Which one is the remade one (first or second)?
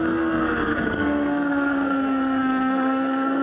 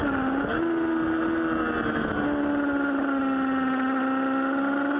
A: first